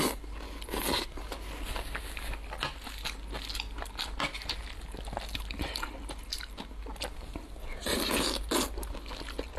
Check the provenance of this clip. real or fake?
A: real